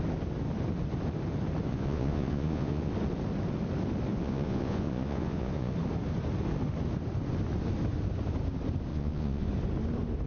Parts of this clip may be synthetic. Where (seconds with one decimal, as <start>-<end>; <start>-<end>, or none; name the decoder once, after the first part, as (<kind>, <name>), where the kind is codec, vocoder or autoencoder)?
1.7-2.9 (vocoder, Vocos); 4.1-5.7; 8.9-9.5